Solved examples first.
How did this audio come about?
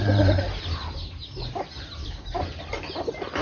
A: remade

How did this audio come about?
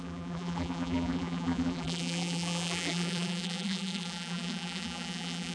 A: remade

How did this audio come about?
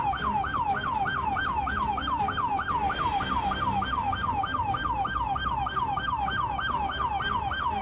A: recorded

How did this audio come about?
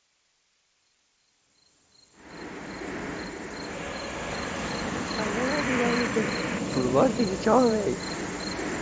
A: remade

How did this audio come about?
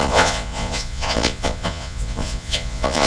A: remade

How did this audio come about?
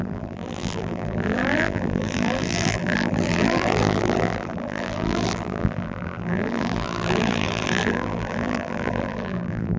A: remade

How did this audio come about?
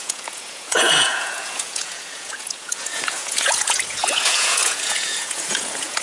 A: remade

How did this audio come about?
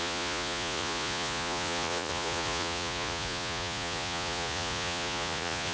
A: remade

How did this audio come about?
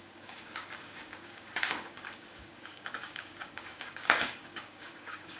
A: remade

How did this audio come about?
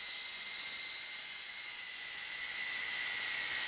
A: remade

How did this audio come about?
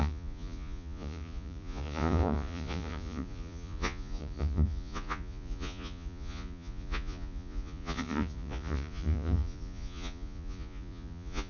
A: remade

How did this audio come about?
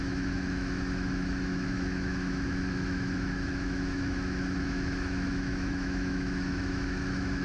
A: remade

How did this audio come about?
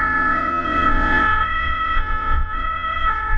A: remade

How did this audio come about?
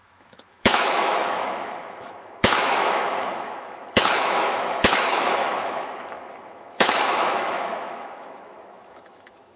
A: remade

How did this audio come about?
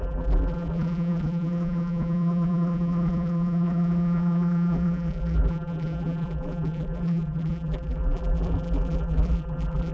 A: remade